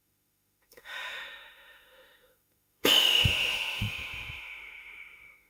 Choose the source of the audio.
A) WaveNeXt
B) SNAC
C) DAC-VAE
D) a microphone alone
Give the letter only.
C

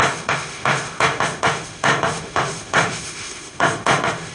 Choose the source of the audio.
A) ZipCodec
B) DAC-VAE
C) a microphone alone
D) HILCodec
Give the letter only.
B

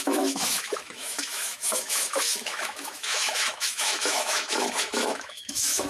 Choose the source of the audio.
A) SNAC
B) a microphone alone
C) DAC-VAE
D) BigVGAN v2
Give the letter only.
C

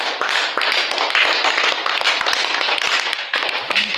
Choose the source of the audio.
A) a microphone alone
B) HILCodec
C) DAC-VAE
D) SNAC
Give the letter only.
A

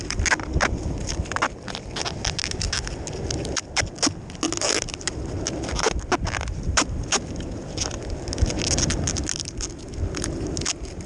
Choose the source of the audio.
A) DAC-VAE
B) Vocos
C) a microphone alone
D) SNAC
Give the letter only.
C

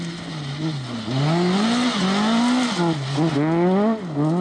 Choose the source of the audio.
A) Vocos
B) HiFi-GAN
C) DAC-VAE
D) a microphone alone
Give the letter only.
D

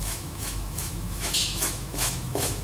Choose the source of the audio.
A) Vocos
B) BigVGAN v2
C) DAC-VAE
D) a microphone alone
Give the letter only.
C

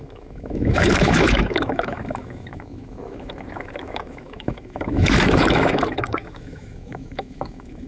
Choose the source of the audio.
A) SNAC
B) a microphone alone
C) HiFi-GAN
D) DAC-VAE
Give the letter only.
D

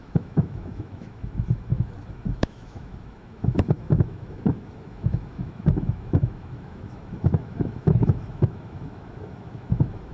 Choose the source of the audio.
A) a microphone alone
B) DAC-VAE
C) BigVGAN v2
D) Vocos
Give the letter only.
B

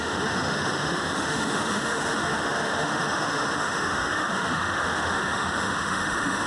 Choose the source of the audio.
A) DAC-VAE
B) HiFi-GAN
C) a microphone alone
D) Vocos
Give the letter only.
A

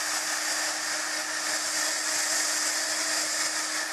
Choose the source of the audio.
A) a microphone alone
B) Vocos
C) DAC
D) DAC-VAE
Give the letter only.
A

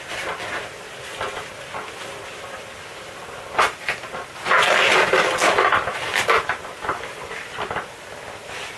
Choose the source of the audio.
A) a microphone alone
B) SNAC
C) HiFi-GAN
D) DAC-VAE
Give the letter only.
A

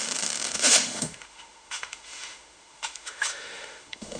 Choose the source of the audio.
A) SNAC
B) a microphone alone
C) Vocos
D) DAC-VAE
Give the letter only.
D